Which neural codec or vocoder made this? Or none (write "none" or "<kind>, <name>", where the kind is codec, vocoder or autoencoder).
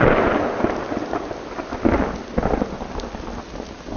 none